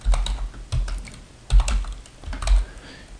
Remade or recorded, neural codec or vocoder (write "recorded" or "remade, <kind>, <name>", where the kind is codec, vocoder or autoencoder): recorded